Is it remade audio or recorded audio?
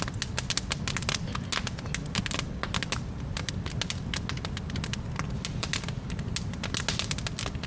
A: recorded